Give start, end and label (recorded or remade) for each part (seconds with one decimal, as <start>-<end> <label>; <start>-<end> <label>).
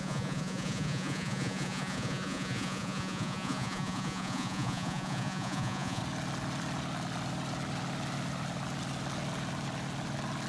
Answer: 0.0-6.0 remade; 6.0-10.5 recorded